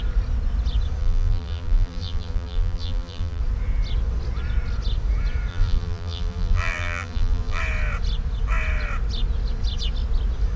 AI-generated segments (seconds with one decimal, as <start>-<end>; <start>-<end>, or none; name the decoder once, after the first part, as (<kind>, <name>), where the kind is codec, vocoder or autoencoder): 1.0-3.4 (vocoder, BigVGAN v2); 5.5-7.6